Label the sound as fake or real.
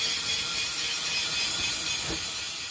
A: fake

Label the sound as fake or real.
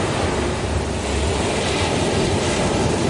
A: real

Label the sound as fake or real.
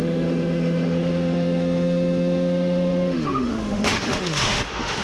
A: fake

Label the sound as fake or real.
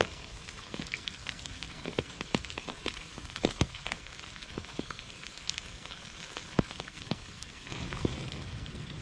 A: fake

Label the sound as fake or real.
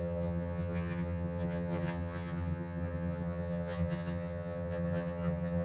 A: fake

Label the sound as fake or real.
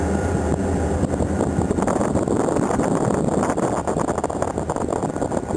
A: real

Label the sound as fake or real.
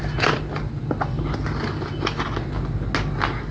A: real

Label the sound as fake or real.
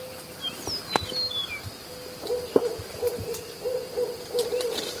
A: real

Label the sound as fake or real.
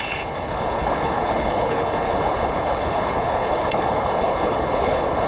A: fake